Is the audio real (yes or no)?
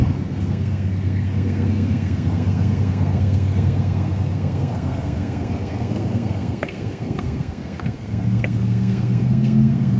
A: no